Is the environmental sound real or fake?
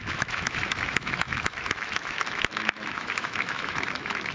fake